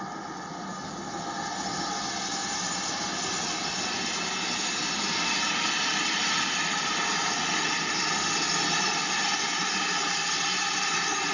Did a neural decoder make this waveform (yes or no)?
no